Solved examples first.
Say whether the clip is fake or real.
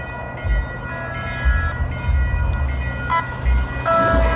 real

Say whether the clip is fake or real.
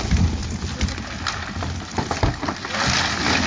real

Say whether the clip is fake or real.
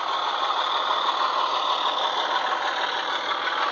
real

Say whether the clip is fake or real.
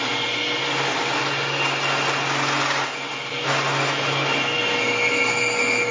real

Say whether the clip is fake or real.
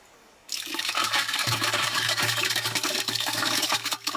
fake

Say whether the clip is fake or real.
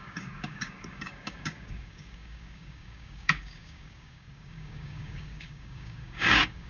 fake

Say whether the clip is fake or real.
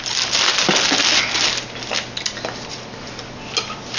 real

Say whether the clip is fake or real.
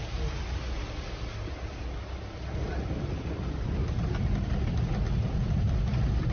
real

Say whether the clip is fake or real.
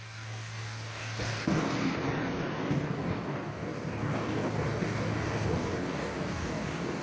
fake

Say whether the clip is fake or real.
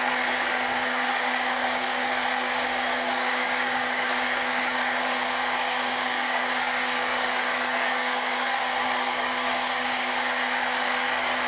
fake